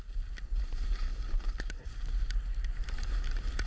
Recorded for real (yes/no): no